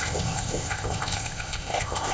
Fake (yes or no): yes